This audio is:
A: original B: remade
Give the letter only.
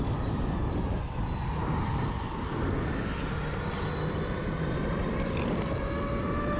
A